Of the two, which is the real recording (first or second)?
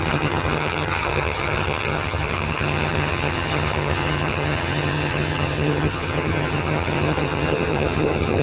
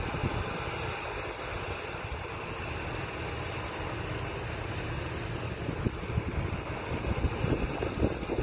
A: second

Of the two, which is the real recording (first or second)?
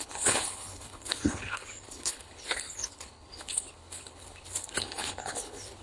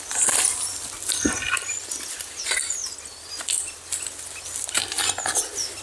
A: second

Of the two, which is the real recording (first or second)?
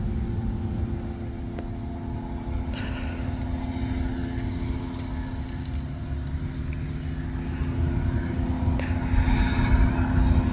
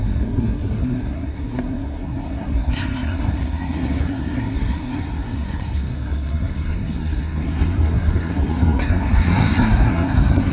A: first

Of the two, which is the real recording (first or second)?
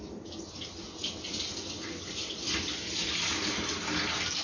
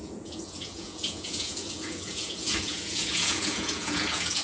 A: first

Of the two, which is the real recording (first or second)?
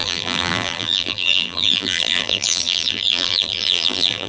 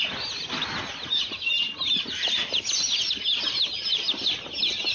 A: second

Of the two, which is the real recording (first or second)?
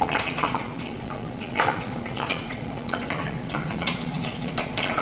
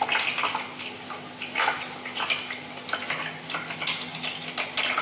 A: second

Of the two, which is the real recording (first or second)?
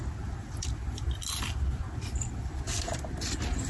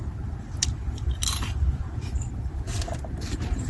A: first